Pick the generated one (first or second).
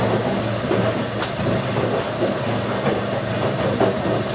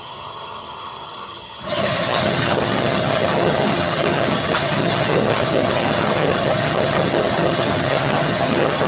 second